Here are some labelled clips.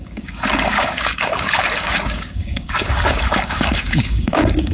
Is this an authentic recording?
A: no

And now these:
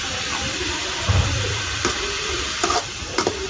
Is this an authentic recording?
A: no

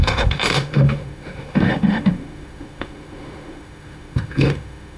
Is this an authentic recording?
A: no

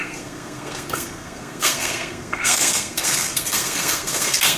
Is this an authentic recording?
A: no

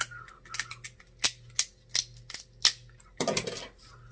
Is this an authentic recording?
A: yes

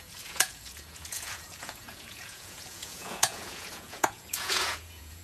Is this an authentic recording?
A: no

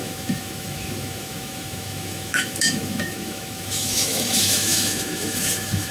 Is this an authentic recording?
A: no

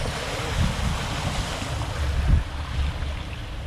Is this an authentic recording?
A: yes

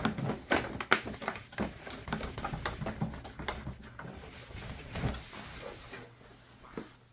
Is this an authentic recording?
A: yes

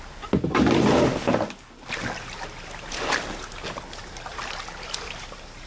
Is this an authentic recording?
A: yes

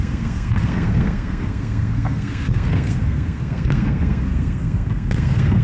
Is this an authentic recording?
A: no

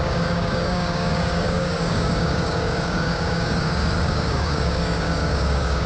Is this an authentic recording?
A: no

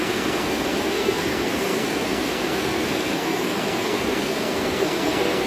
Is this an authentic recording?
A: no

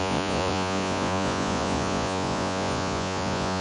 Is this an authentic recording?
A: no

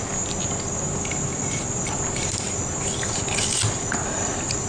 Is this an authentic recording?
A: yes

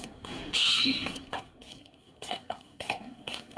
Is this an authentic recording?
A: no